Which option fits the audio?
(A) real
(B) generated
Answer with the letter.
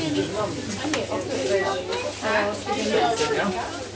A